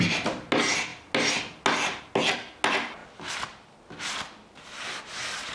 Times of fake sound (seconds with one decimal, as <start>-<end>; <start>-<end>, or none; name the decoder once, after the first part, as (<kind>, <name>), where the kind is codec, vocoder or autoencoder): none